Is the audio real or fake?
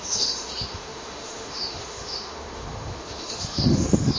fake